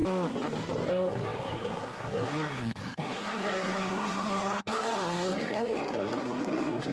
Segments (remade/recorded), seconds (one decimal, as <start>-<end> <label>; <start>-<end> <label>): 0.0-0.9 recorded; 0.9-6.9 remade